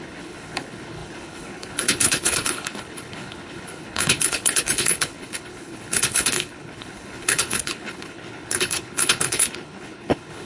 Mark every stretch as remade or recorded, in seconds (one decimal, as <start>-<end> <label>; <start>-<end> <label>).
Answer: 0.0-10.5 remade